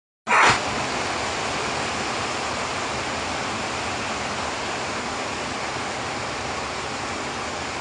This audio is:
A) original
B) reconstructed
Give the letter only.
A